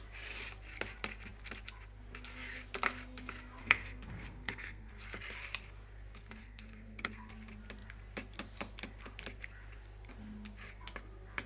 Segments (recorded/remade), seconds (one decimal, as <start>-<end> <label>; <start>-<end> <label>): 0.0-3.6 recorded; 3.6-4.9 remade; 4.9-6.4 recorded; 6.4-7.3 remade; 7.3-11.5 recorded